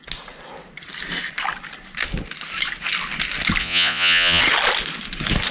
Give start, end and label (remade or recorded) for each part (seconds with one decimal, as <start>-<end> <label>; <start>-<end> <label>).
0.0-3.6 recorded; 3.6-4.4 remade; 4.4-5.5 recorded